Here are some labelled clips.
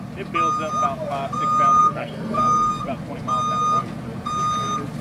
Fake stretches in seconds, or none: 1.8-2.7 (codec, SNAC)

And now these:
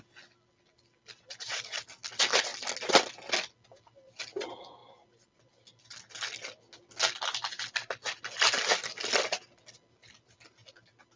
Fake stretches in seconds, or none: none

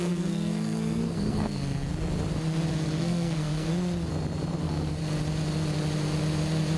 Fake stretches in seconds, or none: 0.0-1.9 (codec, SNAC); 2.7-3.7; 4.6-5.0

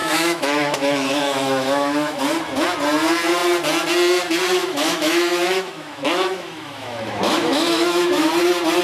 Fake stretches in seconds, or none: 0.0-2.2 (autoencoder, DAC-VAE); 4.6-8.3